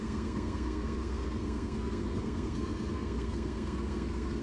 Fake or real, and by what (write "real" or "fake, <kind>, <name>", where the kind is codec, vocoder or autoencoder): fake, codec, SNAC